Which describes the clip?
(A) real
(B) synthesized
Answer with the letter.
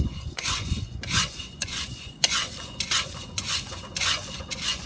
B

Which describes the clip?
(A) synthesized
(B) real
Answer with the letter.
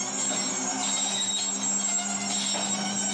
B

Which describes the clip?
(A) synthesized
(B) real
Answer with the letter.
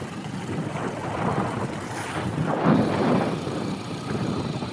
B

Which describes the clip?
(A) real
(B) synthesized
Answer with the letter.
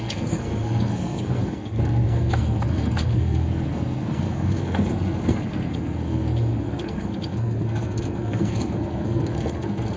B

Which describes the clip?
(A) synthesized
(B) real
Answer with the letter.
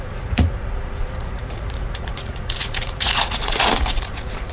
A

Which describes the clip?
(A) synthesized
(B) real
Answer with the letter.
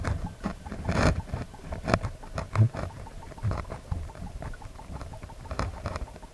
A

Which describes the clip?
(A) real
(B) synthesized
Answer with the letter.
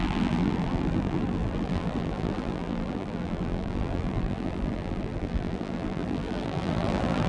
B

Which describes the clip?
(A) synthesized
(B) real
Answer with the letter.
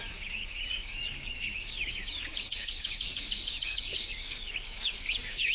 A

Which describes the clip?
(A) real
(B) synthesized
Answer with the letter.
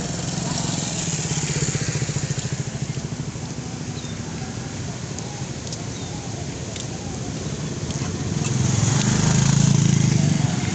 A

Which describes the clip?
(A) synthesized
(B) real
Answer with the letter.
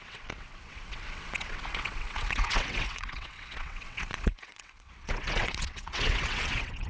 A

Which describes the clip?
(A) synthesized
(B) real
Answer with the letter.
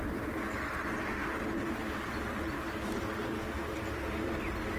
B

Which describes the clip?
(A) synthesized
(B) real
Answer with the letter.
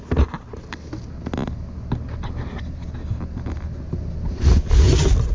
B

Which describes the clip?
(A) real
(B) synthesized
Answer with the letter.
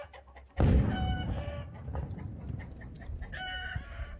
A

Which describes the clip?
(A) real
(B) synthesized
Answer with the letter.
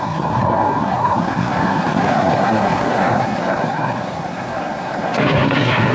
B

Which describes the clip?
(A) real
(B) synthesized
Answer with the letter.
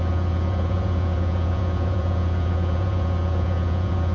B